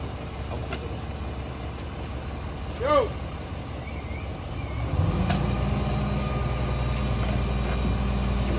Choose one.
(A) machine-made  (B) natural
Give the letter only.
B